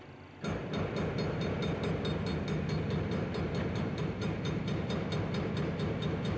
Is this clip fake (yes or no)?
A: no